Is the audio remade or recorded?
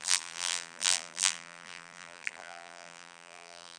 remade